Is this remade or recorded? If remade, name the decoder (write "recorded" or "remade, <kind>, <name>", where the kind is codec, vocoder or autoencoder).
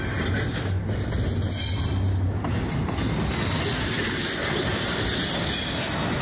recorded